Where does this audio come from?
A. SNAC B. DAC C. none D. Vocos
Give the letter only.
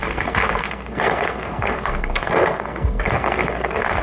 A